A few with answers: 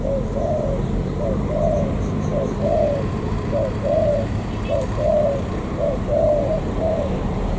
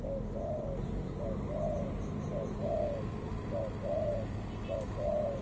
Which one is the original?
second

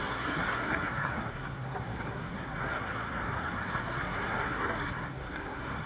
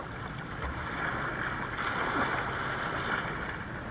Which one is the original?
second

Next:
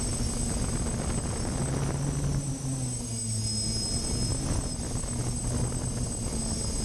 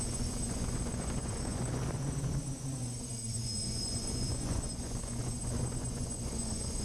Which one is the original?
first